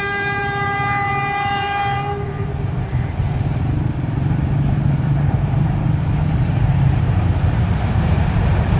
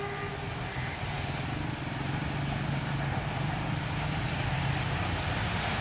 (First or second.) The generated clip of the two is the first